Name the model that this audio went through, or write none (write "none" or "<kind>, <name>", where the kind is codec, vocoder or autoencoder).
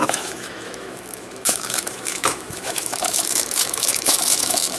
autoencoder, DAC-VAE